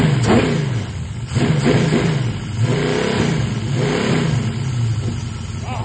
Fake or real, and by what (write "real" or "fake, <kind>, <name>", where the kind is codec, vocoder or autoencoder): real